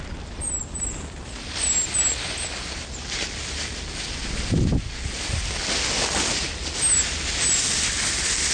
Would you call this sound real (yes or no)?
yes